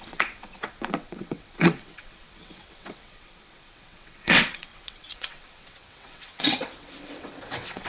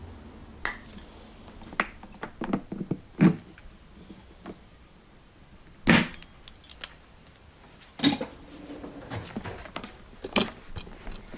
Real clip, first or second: second